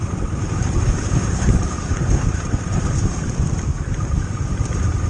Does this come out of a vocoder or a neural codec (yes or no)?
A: yes